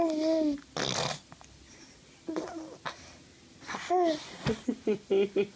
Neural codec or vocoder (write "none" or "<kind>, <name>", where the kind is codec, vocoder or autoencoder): none